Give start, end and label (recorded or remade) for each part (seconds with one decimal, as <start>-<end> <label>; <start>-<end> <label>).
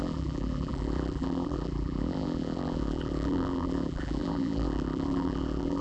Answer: 0.0-5.8 remade